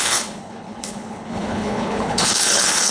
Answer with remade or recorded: remade